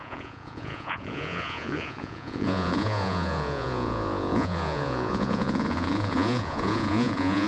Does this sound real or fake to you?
fake